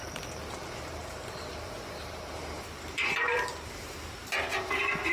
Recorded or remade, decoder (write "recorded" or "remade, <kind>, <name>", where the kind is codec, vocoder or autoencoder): remade, vocoder, BigVGAN v2